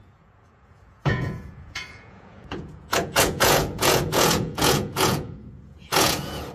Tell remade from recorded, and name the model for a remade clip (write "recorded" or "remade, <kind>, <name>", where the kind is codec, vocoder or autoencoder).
remade, vocoder, Vocos